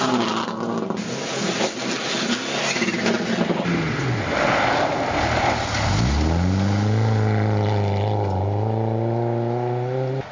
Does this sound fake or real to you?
real